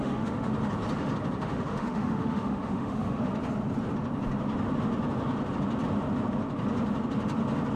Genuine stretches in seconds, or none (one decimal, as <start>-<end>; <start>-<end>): 0.5-1.4; 3.3-7.8